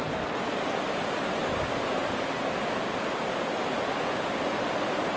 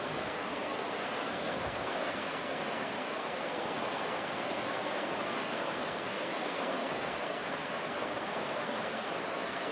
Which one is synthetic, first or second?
second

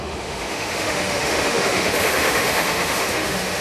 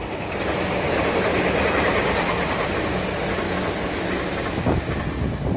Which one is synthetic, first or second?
first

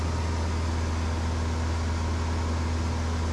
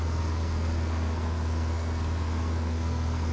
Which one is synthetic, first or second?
second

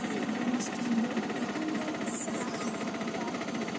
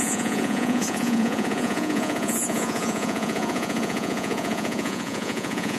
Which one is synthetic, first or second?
second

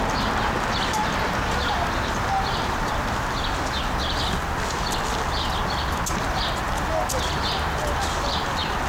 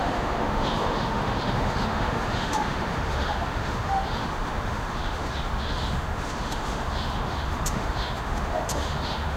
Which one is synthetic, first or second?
second